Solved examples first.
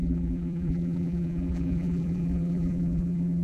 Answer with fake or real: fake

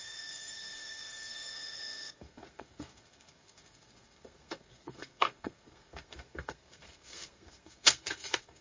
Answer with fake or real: fake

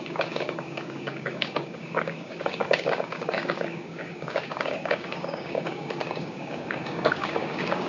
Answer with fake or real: fake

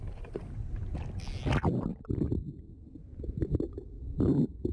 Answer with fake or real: real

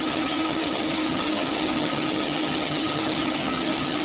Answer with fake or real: fake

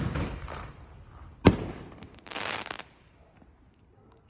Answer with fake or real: fake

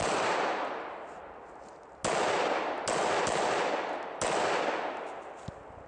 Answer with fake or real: real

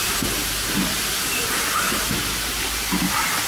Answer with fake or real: real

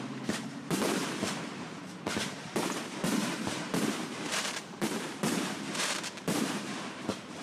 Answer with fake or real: fake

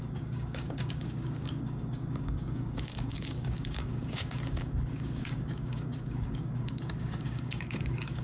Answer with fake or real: fake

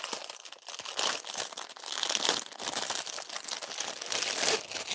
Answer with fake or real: real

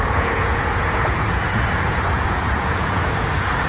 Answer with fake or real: fake